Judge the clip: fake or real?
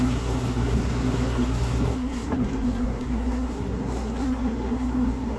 fake